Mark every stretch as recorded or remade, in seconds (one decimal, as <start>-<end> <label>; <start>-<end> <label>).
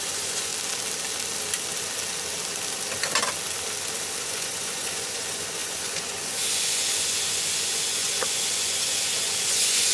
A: 0.0-0.5 remade; 0.5-4.2 recorded; 4.2-9.9 remade